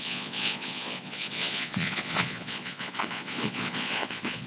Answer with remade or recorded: remade